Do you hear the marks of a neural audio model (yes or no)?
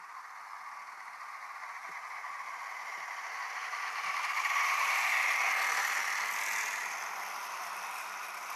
no